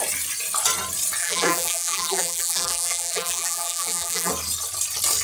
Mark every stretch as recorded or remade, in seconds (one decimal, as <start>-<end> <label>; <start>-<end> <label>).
0.0-1.2 recorded; 1.2-4.3 remade; 4.3-5.2 recorded